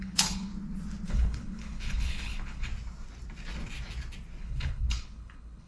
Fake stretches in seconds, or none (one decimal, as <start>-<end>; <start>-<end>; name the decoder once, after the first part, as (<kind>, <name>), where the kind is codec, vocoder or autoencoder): 0.0-0.5 (codec, HILCodec); 1.1-2.7; 4.4-5.7